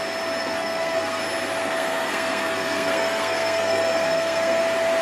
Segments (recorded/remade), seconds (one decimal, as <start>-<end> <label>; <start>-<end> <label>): 0.0-0.4 recorded; 0.4-1.2 remade; 1.2-1.6 recorded; 1.6-4.6 remade; 4.6-5.0 recorded